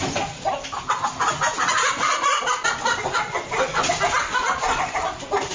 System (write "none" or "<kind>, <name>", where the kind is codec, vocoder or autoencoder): vocoder, BigVGAN v2